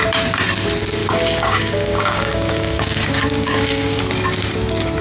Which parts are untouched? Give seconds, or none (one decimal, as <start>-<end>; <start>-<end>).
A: 0.0-1.0; 4.0-5.0

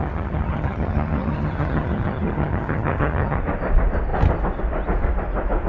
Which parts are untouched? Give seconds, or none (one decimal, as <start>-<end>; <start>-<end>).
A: 3.4-5.7